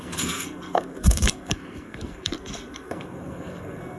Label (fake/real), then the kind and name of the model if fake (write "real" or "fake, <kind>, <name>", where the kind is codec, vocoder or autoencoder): fake, codec, SNAC